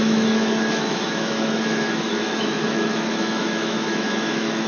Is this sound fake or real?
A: fake